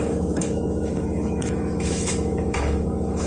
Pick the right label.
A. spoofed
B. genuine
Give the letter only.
A